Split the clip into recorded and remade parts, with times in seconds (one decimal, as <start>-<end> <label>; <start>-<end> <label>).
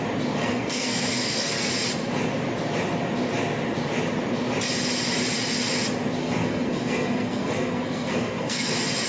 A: 0.0-0.4 recorded; 0.4-1.7 remade; 1.7-6.2 recorded; 6.2-8.7 remade; 8.7-9.1 recorded